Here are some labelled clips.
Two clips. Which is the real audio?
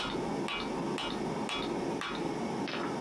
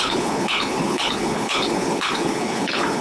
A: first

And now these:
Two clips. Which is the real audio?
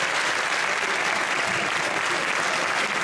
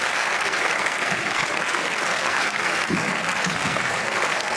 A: first